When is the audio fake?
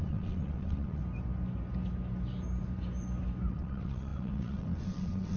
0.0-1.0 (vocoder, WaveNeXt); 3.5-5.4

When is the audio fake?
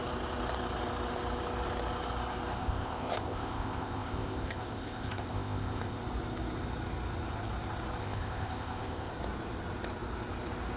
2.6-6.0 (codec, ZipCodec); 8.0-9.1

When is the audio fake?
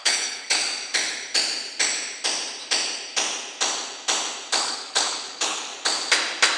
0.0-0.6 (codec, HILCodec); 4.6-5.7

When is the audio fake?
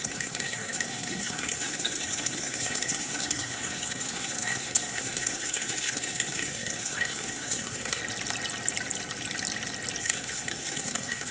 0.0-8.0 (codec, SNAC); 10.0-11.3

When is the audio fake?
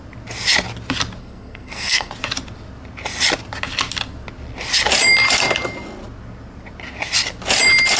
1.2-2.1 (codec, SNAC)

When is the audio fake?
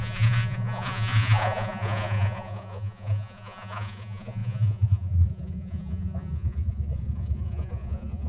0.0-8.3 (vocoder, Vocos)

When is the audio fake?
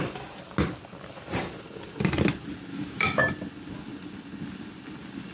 2.7-3.2 (autoencoder, DAC-VAE)